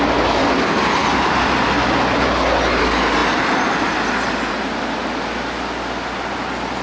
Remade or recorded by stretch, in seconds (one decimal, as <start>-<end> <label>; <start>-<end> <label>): 0.0-6.8 recorded